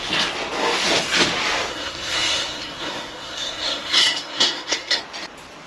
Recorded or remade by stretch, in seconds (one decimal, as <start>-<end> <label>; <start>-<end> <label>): 0.0-1.7 recorded; 1.7-5.0 remade; 5.0-5.7 recorded

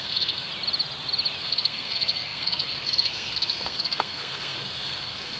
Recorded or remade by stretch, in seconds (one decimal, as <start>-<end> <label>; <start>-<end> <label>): 0.0-0.5 remade; 0.5-1.4 recorded; 1.4-5.4 remade